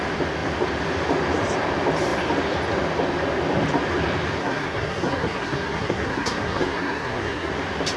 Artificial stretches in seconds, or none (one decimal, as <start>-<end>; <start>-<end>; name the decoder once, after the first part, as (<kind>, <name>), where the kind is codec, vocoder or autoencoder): 4.4-7.5 (codec, SNAC)